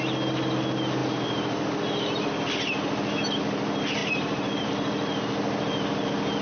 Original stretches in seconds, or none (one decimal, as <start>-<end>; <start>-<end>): 0.0-4.0; 4.7-6.4